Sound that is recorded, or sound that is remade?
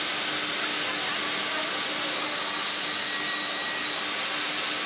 recorded